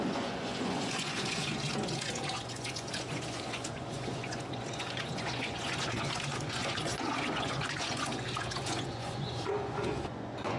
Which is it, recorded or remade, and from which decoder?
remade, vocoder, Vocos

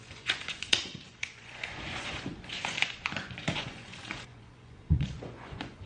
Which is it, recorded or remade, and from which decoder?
remade, vocoder, Vocos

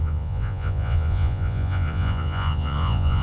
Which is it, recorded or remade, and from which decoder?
remade, vocoder, Vocos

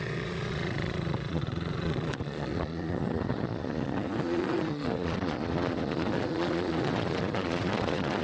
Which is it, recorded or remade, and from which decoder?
remade, vocoder, Vocos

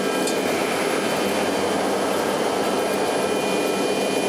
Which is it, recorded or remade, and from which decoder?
recorded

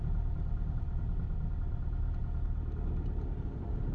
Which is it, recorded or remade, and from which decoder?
recorded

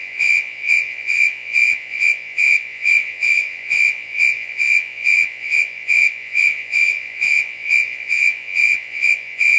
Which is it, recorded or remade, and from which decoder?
remade, vocoder, Vocos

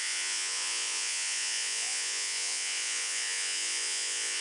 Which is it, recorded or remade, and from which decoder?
remade, vocoder, Vocos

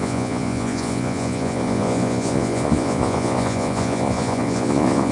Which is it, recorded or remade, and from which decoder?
remade, vocoder, Vocos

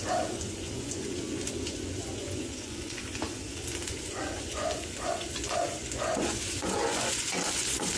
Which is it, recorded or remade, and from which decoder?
remade, vocoder, Vocos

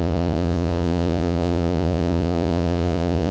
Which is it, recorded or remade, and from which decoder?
remade, vocoder, Vocos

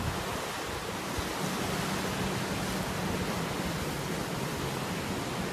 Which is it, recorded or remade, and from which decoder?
recorded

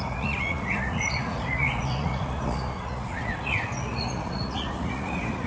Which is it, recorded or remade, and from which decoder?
remade, vocoder, Vocos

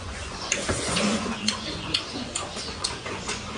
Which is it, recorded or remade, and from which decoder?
remade, vocoder, Vocos